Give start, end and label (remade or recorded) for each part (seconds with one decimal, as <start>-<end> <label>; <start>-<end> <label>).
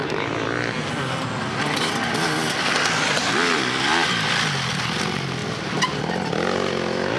0.0-5.4 recorded; 5.4-6.0 remade; 6.0-7.2 recorded